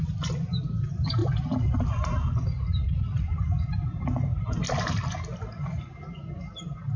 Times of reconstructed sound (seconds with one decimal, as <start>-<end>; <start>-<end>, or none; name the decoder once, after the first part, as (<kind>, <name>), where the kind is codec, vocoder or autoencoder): none